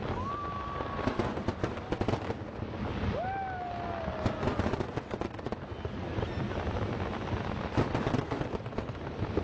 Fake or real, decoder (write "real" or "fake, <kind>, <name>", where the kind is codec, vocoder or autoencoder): real